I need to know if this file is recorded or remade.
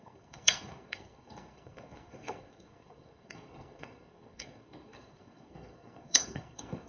remade